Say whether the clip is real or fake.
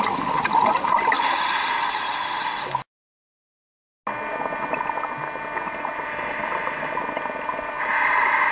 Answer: real